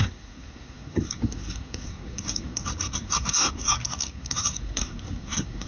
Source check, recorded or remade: remade